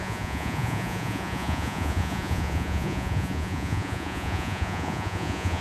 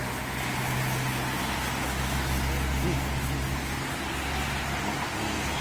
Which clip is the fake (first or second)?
first